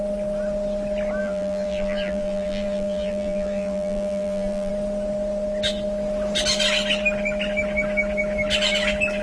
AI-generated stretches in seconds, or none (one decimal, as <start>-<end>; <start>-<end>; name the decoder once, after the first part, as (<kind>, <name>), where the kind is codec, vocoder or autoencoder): 1.2-4.7 (vocoder, BigVGAN v2)